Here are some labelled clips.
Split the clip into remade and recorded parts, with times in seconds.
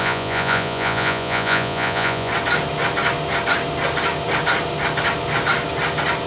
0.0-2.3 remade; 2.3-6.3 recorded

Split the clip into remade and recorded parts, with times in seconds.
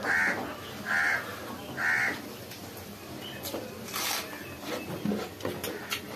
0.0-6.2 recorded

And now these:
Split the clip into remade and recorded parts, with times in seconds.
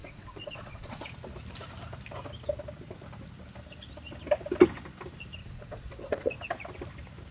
0.0-1.0 remade; 1.0-5.4 recorded; 5.4-6.3 remade; 6.3-7.3 recorded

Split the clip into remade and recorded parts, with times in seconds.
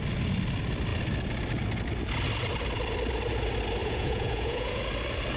0.0-3.8 recorded; 3.8-4.8 remade; 4.8-5.4 recorded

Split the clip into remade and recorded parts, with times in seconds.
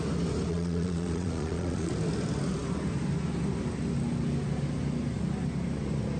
0.0-0.5 recorded; 0.5-1.9 remade; 1.9-6.2 recorded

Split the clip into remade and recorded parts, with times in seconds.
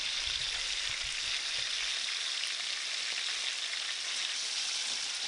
0.0-5.3 recorded